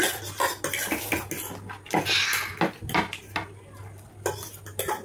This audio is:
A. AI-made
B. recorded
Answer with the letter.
B